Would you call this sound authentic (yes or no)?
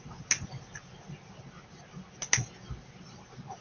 yes